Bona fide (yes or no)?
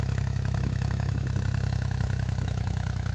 no